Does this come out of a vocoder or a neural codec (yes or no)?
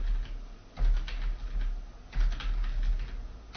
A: no